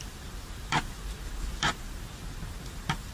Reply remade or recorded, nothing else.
remade